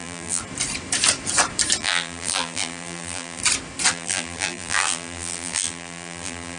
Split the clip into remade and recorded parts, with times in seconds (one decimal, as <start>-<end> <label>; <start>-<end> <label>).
0.0-0.4 remade; 0.4-1.8 recorded; 1.8-3.4 remade; 3.4-3.9 recorded; 3.9-6.6 remade